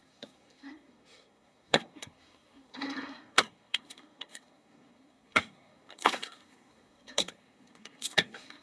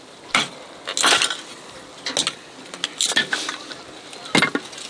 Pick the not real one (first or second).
first